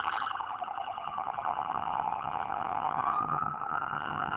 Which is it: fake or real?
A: fake